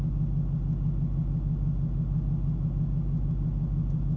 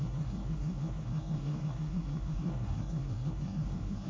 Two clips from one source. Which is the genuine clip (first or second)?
first